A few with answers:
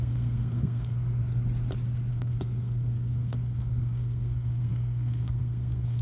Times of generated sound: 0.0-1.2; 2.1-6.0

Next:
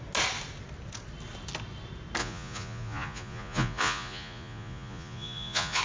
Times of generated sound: 2.2-5.8

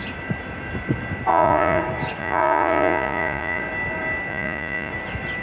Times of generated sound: 1.3-1.8; 2.2-3.6; 4.3-4.9